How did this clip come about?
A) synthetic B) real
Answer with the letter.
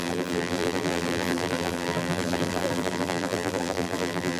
A